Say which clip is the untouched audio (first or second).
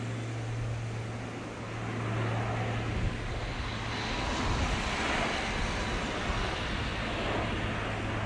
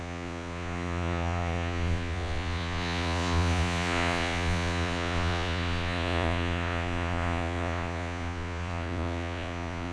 first